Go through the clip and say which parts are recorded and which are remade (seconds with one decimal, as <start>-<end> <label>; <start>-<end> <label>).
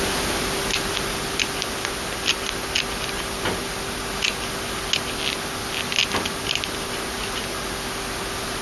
0.0-8.6 recorded